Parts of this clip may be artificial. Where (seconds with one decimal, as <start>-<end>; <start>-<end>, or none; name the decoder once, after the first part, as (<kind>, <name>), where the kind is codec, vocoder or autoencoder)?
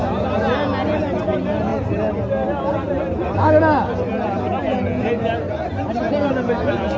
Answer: none